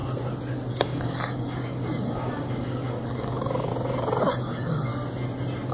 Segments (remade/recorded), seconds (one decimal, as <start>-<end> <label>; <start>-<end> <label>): 0.0-0.7 recorded; 0.7-3.7 remade; 3.7-4.2 recorded; 4.2-4.9 remade; 4.9-5.7 recorded